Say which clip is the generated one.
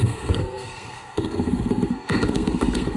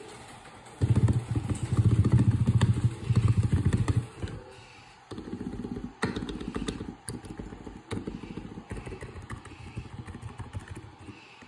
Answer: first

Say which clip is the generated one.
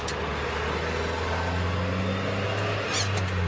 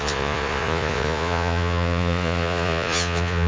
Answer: second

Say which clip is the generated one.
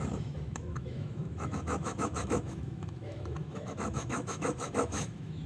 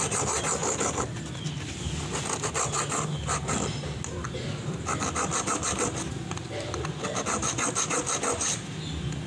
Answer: first